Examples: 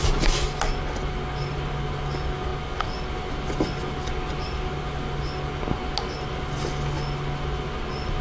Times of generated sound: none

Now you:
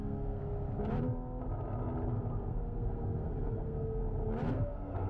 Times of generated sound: 0.0-0.4 (codec, SNAC); 2.1-4.0; 4.5-5.1

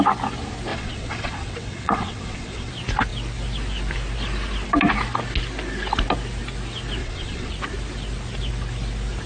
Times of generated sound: 0.7-2.7 (vocoder, WaveNeXt); 7.0-7.5